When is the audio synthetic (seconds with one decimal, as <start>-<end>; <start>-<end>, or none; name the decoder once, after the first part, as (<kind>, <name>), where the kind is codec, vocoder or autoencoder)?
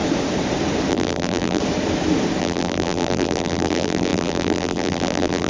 0.9-1.6 (vocoder, BigVGAN v2); 2.4-5.5